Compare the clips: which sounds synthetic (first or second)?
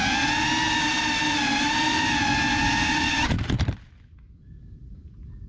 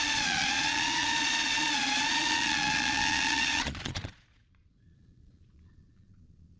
second